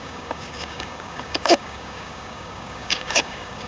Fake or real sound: fake